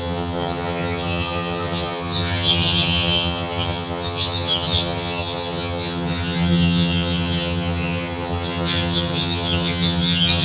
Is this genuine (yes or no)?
no